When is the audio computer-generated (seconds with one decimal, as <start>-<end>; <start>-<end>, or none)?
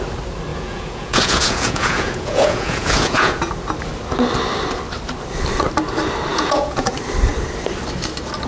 0.5-3.5; 6.3-6.9